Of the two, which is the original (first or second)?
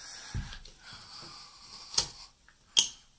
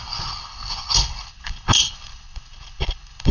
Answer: first